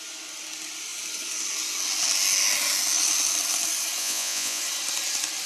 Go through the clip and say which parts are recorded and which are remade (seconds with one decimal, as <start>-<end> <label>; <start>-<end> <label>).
0.0-4.0 recorded; 4.0-4.6 remade; 4.6-5.5 recorded

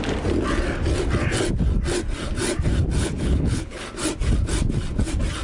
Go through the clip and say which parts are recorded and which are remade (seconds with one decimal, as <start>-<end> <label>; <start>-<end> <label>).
0.0-3.0 recorded; 3.0-3.8 remade; 3.8-5.4 recorded

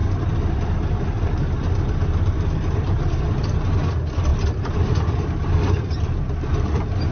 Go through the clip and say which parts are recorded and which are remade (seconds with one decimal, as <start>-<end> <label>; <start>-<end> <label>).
0.0-3.4 remade; 3.4-4.3 recorded; 4.3-5.7 remade; 5.7-7.1 recorded

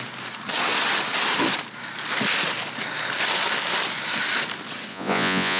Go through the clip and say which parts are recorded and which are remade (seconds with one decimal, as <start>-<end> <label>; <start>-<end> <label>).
0.0-4.9 recorded; 4.9-5.6 remade

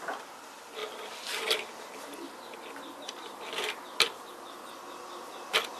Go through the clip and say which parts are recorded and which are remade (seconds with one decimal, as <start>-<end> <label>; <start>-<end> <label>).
0.0-5.8 recorded

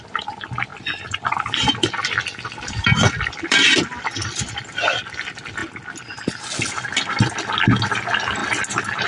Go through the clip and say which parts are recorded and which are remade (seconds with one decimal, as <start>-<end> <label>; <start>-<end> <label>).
0.0-0.7 recorded; 0.7-4.8 remade; 4.8-8.4 recorded; 8.4-9.1 remade

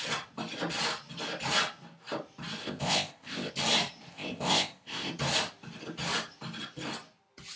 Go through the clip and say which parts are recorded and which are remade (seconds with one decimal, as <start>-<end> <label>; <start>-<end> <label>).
0.0-2.6 recorded; 2.6-3.5 remade; 3.5-4.1 recorded; 4.1-5.1 remade; 5.1-7.6 recorded